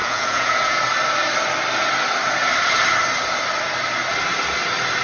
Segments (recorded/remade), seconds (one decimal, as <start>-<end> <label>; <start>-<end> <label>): 0.0-0.8 remade; 0.8-5.0 recorded